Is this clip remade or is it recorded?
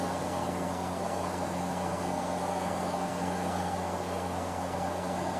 remade